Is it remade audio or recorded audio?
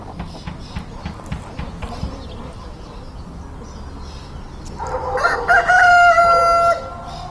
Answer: recorded